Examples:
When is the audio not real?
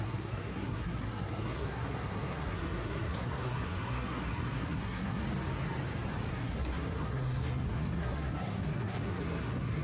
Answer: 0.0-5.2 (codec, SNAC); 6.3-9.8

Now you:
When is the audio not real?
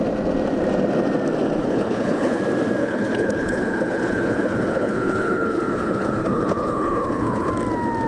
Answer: 1.6-2.4 (codec, HILCodec); 2.8-7.5